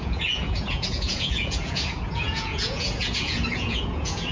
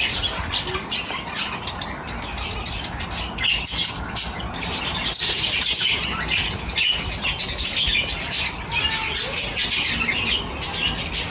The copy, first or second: first